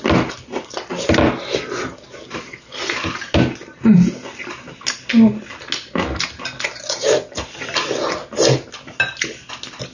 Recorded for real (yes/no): yes